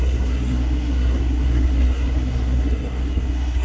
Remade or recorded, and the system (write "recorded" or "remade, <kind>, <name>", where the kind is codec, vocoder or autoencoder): remade, codec, SNAC